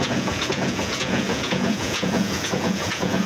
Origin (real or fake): fake